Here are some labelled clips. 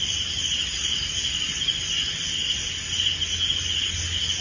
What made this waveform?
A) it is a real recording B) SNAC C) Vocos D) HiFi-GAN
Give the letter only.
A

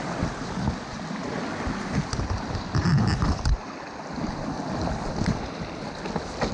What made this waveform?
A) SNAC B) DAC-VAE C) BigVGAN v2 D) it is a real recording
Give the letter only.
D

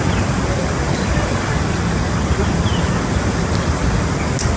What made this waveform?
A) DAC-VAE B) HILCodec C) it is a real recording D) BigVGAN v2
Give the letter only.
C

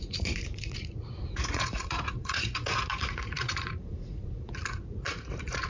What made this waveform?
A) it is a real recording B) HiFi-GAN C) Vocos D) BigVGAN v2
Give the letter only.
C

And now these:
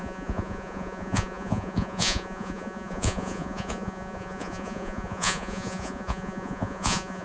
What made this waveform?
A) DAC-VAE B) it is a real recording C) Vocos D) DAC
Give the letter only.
C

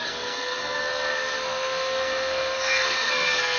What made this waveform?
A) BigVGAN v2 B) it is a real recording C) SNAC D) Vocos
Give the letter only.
C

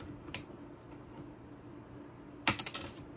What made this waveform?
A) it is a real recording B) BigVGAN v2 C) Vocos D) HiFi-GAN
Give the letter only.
A